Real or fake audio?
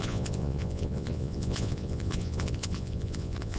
fake